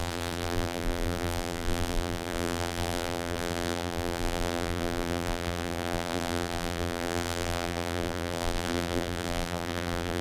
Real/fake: fake